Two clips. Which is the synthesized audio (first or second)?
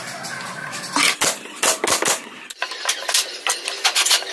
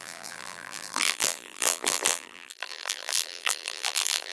second